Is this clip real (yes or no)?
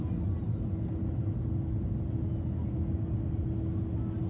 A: yes